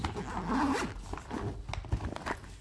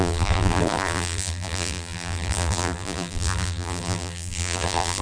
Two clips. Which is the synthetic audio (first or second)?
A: second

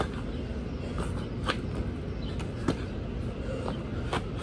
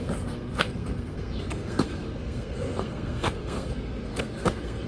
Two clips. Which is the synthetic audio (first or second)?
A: second